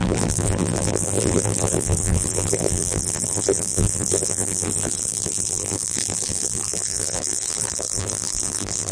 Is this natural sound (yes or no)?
no